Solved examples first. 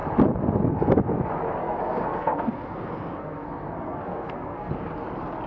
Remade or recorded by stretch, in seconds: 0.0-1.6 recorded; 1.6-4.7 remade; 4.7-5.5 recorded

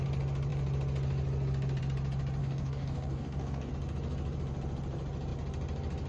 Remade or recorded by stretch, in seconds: 0.0-2.4 recorded; 2.4-3.7 remade; 3.7-6.1 recorded

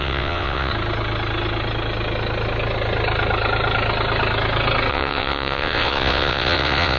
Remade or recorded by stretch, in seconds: 0.0-0.7 remade; 0.7-4.9 recorded; 4.9-7.0 remade

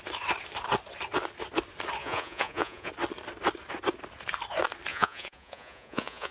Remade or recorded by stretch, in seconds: 0.0-2.0 recorded; 2.0-2.9 remade; 2.9-4.9 recorded; 4.9-6.3 remade

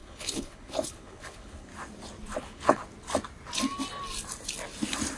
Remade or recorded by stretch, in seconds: 0.0-1.7 remade; 1.7-2.4 recorded; 2.4-2.8 remade; 2.8-5.2 recorded

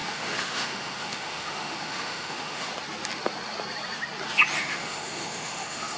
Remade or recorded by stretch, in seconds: 0.0-2.7 remade; 2.7-4.6 recorded; 4.6-6.0 remade

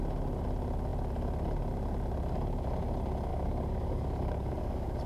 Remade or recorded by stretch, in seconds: 0.0-3.3 recorded; 3.3-5.1 remade

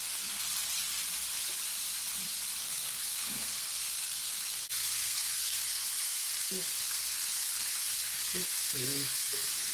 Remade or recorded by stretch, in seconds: 0.0-0.4 remade; 0.4-2.6 recorded; 2.6-9.7 remade